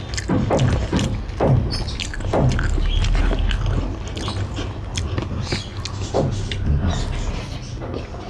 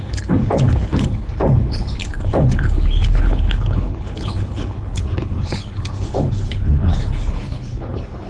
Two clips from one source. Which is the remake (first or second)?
second